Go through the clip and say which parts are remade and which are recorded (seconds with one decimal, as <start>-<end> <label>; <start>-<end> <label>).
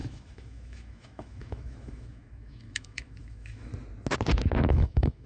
0.0-3.7 remade; 3.7-4.7 recorded; 4.7-5.3 remade